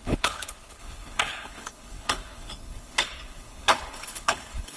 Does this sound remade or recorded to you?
remade